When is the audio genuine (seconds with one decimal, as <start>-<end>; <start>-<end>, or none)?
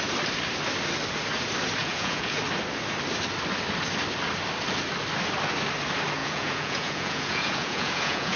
0.0-1.8; 2.4-6.2